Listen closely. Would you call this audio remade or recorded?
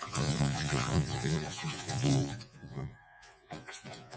remade